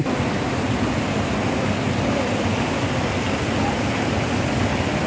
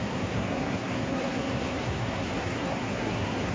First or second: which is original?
first